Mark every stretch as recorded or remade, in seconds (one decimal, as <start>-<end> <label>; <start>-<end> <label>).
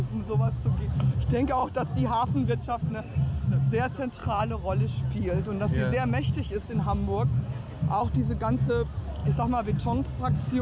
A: 0.0-10.6 recorded